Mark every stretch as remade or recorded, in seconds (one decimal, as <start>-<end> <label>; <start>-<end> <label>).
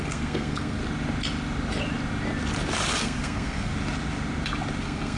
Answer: 0.0-0.8 remade; 0.8-3.0 recorded; 3.0-3.7 remade; 3.7-4.8 recorded; 4.8-5.2 remade